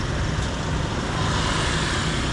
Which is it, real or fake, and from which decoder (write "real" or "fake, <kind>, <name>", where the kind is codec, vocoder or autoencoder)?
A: real